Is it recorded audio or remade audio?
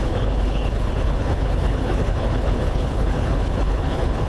remade